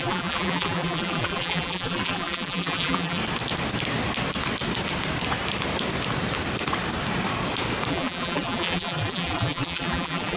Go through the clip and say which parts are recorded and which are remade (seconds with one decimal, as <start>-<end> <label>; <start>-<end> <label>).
0.0-3.2 remade; 3.2-7.9 recorded; 7.9-10.4 remade